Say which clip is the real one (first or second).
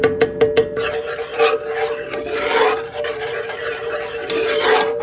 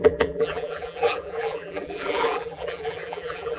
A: first